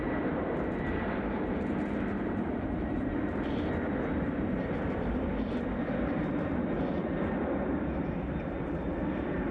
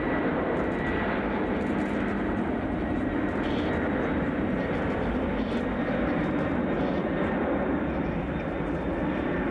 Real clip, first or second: second